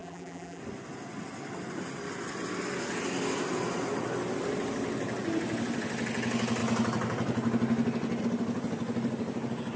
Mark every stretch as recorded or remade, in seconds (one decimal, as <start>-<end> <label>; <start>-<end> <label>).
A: 0.0-0.6 remade; 0.6-9.8 recorded

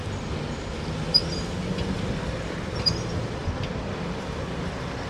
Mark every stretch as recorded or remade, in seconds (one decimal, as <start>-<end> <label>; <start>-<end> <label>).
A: 0.0-3.4 recorded; 3.4-3.9 remade; 3.9-5.1 recorded